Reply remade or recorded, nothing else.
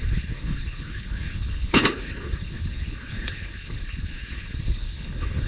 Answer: remade